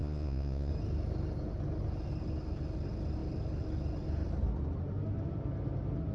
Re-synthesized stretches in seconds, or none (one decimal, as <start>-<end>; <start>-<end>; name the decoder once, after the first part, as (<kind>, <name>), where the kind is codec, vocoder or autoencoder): 0.0-0.7 (vocoder, Vocos)